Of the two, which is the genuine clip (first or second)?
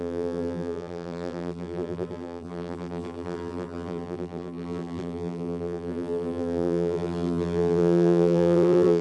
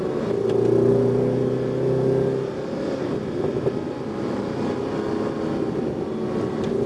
second